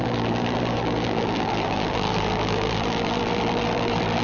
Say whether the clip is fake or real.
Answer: fake